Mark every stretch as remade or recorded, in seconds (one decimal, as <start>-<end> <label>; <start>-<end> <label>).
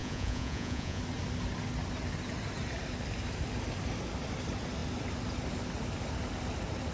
0.0-1.0 remade; 1.0-6.9 recorded